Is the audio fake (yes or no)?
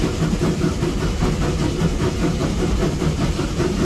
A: yes